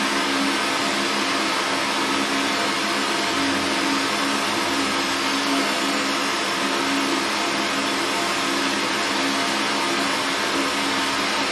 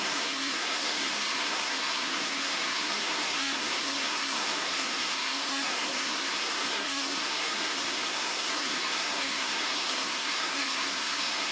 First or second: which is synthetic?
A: second